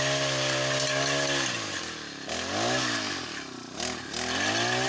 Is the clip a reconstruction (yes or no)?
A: no